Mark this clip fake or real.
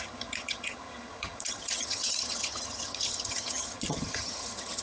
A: fake